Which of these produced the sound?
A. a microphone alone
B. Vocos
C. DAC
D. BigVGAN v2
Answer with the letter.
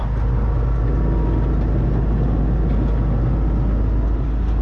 A